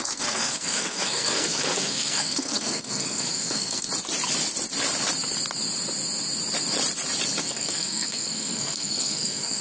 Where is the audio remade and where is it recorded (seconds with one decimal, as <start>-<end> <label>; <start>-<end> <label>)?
0.0-3.9 remade; 3.9-7.4 recorded; 7.4-9.6 remade